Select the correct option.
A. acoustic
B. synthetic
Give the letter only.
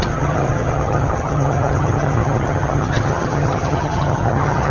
B